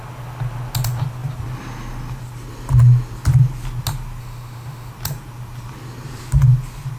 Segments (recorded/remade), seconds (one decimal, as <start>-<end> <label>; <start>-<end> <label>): 0.0-4.2 recorded; 4.2-4.9 remade; 4.9-7.0 recorded